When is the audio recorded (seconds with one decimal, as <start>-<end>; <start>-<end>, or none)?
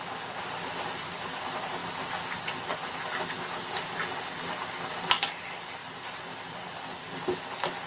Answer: 1.8-5.0